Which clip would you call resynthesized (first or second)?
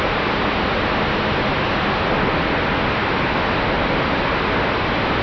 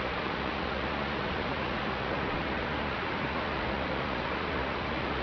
second